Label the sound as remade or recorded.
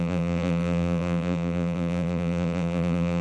remade